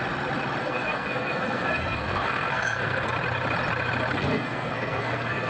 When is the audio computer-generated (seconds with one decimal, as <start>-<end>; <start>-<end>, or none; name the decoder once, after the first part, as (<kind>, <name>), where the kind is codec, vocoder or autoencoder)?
0.6-3.1 (codec, SNAC); 4.1-5.5